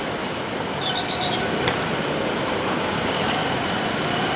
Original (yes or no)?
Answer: yes